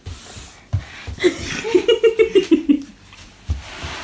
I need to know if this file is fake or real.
real